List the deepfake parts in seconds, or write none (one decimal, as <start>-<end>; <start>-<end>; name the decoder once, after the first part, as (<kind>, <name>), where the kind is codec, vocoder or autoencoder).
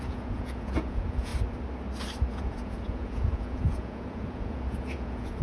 0.0-1.3 (vocoder, Vocos); 2.3-5.4